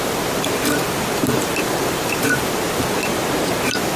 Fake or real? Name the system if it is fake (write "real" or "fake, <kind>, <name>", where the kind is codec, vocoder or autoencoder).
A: fake, vocoder, BigVGAN v2